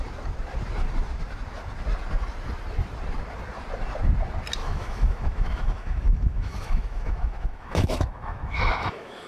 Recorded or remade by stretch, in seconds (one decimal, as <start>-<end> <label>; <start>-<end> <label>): 0.0-4.6 recorded; 4.6-9.3 remade